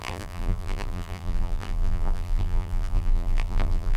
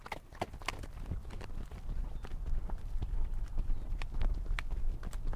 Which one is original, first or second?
second